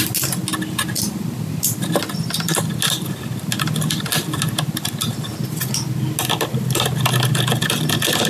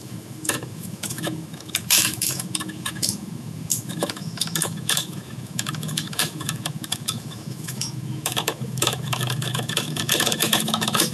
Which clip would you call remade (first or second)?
second